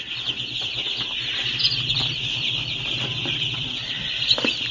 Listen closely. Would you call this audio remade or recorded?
recorded